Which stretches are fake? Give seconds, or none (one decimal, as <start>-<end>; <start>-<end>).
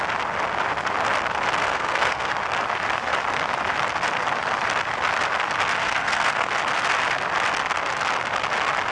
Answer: 1.6-2.3; 5.8-6.5